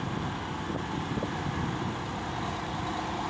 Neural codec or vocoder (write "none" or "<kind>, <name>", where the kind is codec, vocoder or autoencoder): none